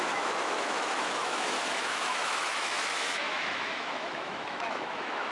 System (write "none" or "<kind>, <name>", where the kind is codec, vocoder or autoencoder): autoencoder, DAC-VAE